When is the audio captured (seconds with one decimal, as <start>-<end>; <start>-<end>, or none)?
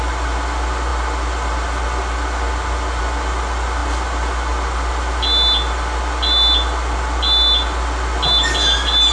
0.0-9.1